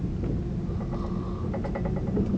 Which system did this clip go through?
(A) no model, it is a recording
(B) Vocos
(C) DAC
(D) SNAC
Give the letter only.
A